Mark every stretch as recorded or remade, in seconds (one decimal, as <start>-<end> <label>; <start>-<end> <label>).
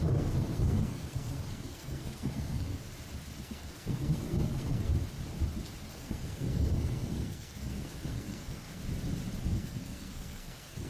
0.0-2.8 remade; 2.8-3.4 recorded; 3.4-4.9 remade; 4.9-5.9 recorded; 5.9-8.8 remade; 8.8-9.4 recorded; 9.4-10.9 remade